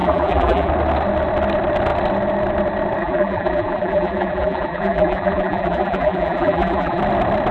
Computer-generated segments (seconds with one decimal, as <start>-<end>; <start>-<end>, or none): 0.0-0.7; 3.0-7.0